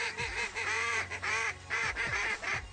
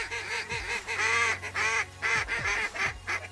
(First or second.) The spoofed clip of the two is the first